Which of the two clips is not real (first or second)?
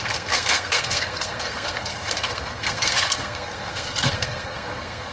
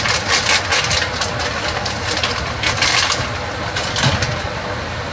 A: first